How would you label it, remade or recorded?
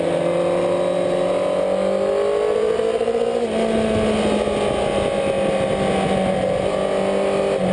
recorded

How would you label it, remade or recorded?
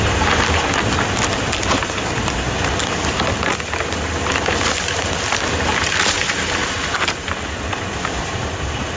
recorded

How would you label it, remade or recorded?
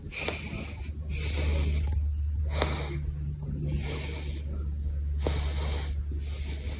recorded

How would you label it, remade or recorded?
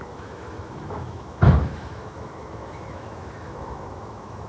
remade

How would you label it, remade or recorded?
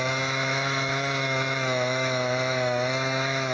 remade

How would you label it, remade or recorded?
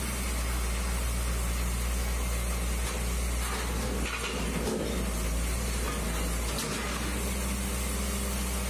recorded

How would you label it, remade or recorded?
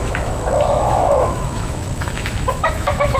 remade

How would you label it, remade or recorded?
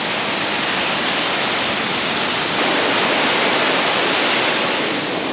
recorded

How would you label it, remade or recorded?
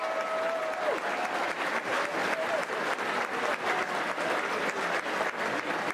recorded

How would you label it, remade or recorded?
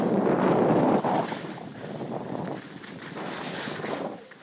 recorded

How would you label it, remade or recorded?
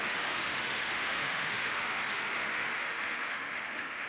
remade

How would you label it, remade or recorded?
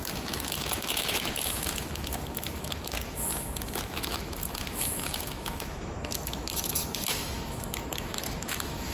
remade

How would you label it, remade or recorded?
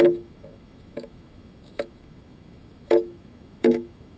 remade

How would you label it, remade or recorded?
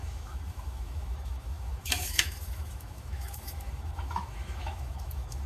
remade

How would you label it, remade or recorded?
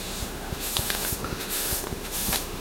remade